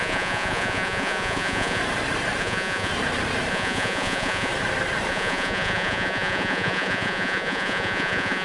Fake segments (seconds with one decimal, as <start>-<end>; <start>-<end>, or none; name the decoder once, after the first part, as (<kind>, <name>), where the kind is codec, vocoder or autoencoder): 0.0-1.8 (vocoder, Vocos); 2.4-2.9; 3.5-4.5; 5.1-8.4